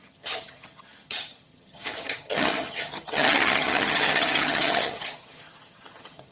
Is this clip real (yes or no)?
no